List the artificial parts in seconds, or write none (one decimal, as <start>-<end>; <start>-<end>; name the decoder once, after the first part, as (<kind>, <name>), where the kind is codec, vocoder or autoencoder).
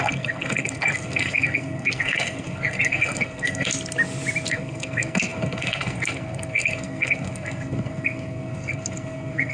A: 0.0-3.7 (codec, SNAC); 4.5-9.5